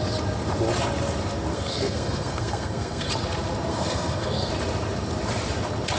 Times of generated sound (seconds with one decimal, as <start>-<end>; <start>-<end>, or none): 1.5-3.1; 3.7-4.5